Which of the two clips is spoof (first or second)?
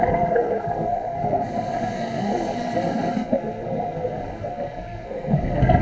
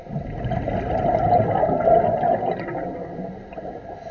first